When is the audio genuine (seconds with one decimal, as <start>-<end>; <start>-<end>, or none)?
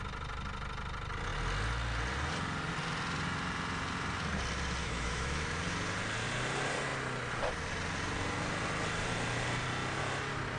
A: 0.0-4.8; 5.6-10.6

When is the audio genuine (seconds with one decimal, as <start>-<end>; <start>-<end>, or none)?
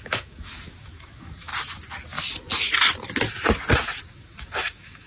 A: 1.5-4.1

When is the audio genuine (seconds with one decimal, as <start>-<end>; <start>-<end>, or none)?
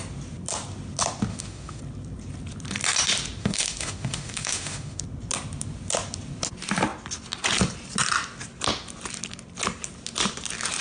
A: 0.0-1.3; 1.8-3.4; 5.0-10.8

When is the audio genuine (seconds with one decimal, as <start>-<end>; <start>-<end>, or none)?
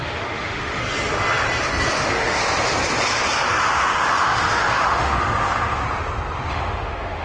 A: 0.8-2.0; 2.4-3.6; 5.8-6.5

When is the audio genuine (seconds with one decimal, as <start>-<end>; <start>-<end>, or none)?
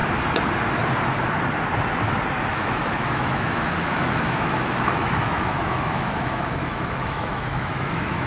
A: 0.0-2.5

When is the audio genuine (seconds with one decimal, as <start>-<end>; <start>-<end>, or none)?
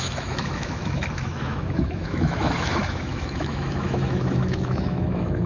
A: none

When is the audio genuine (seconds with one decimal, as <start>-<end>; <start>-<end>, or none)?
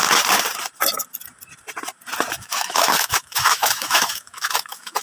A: 0.0-2.3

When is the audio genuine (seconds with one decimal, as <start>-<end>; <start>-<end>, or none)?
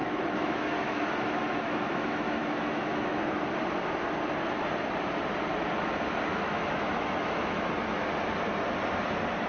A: 3.4-6.3; 7.7-9.5